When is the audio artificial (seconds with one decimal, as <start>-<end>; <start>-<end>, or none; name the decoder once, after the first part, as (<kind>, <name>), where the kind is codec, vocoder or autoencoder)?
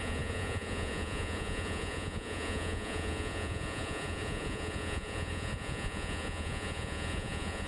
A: 0.0-7.7 (vocoder, Vocos)